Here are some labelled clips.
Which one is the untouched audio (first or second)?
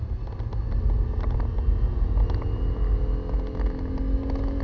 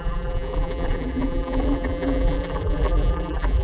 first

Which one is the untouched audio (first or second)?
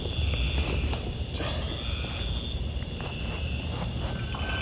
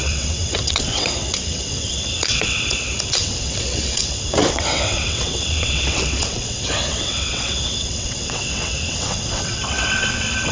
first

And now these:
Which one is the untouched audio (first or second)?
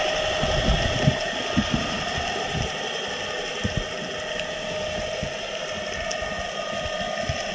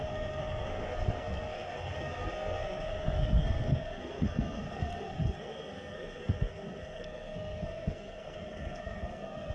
first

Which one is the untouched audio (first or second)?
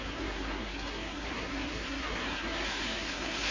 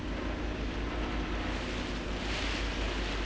second